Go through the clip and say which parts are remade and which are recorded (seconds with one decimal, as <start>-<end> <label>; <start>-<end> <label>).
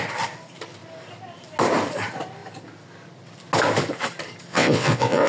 0.0-4.5 recorded; 4.5-5.3 remade